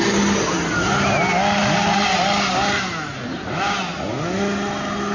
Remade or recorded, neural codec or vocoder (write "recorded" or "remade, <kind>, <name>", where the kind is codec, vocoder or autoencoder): recorded